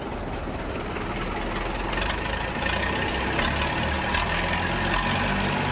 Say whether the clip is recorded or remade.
recorded